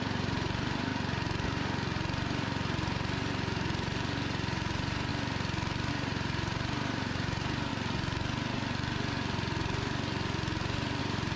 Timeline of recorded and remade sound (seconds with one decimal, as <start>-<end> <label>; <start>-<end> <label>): 0.0-0.9 remade; 0.9-2.4 recorded; 2.4-5.1 remade; 5.1-5.9 recorded; 5.9-7.7 remade; 7.7-11.0 recorded; 11.0-11.4 remade